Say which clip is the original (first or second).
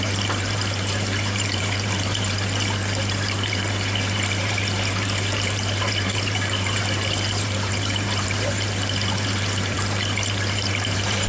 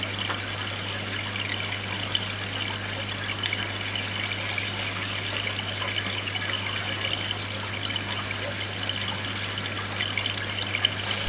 second